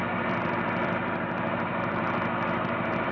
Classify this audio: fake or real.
fake